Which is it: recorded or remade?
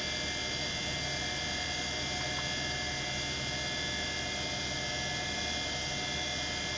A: recorded